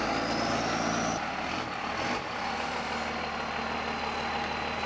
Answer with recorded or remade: recorded